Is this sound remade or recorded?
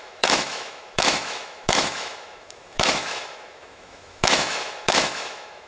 remade